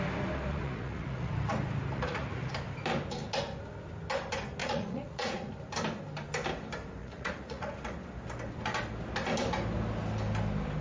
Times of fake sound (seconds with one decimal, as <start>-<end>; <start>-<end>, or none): 0.5-1.3; 1.9-2.5; 4.6-5.5; 7.0-7.7